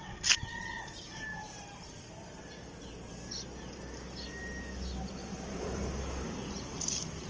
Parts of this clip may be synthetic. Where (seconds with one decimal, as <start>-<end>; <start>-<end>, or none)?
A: 1.3-2.0; 5.2-5.9